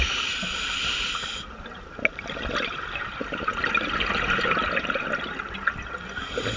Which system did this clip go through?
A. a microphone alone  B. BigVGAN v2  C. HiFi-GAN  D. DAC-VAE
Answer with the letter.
A